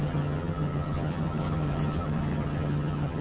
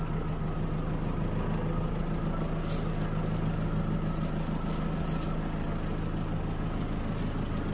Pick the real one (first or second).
second